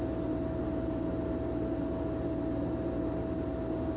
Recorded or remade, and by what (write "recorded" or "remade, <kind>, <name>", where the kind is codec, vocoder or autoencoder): recorded